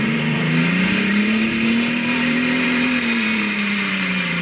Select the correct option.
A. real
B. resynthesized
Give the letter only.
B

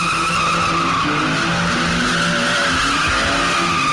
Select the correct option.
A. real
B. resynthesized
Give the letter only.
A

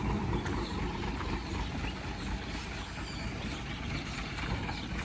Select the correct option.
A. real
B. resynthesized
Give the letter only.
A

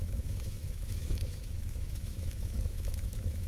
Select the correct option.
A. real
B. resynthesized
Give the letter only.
B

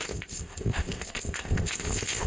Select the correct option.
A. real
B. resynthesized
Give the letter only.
B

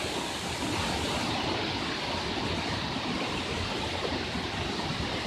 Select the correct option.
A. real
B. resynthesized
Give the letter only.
A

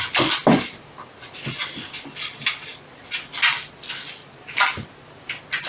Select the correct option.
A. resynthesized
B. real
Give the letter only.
B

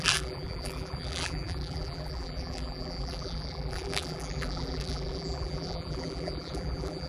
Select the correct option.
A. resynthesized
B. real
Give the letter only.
A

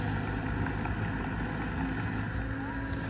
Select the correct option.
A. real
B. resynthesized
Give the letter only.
A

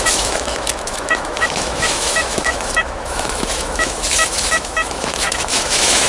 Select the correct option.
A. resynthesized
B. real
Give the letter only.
A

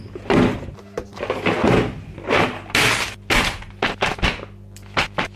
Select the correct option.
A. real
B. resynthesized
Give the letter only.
A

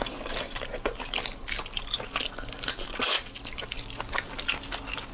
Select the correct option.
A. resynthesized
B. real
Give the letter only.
B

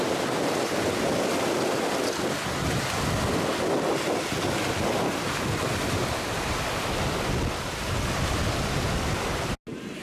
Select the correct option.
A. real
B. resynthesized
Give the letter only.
A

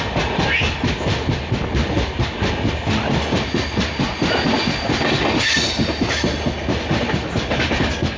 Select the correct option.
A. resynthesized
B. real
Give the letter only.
B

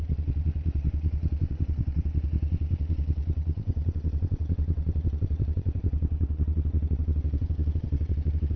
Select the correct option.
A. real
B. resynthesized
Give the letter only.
B